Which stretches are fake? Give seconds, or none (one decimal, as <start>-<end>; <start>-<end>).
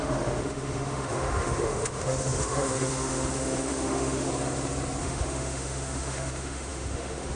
0.0-4.3; 5.0-7.4